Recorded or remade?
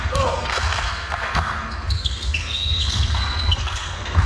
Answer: remade